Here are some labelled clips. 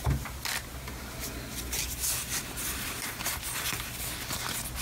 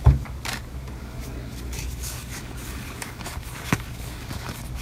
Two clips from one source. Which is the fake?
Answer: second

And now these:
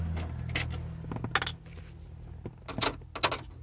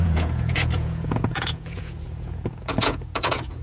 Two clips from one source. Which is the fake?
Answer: second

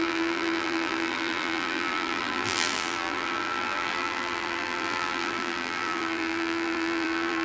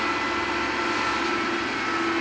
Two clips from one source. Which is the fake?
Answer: first